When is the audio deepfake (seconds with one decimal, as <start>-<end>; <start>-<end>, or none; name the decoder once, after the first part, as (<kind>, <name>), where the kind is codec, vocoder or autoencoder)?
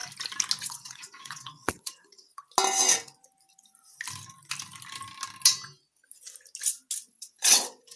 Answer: 0.6-2.3 (vocoder, WaveNeXt); 7.1-8.0